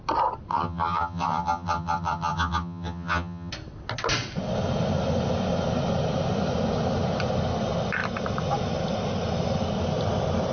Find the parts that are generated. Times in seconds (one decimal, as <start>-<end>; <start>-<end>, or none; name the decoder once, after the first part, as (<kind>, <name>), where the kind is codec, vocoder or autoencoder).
0.5-3.5 (vocoder, HiFi-GAN)